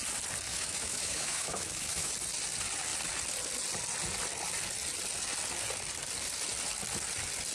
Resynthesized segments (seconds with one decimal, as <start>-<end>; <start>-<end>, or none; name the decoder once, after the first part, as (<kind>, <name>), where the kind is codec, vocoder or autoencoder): 0.5-2.1 (autoencoder, DAC-VAE)